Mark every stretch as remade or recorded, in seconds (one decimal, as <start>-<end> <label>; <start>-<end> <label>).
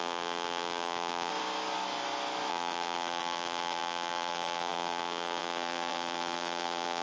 0.0-1.3 remade; 1.3-2.5 recorded; 2.5-7.0 remade